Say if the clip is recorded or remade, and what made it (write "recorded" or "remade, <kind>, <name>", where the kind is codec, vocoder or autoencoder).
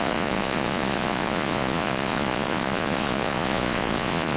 remade, vocoder, Vocos